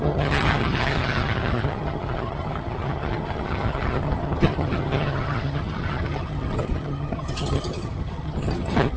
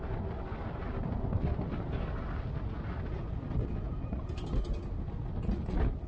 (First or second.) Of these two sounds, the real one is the second